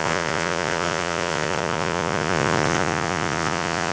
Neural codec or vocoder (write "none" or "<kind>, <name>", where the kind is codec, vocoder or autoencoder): vocoder, Vocos